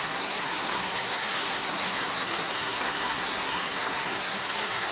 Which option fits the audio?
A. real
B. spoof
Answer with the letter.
B